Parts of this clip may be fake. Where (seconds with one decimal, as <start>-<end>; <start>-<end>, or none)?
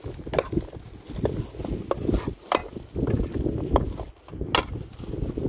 none